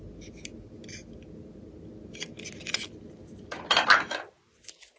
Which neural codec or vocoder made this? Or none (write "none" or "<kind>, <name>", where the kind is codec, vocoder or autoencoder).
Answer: none